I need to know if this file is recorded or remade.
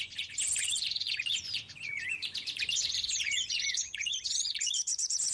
remade